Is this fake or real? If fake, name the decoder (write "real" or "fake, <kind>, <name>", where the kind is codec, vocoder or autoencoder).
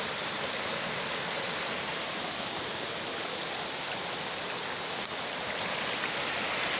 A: real